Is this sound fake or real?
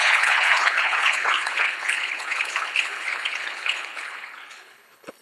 fake